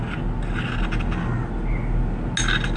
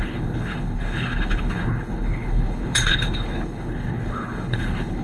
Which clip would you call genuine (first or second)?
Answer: first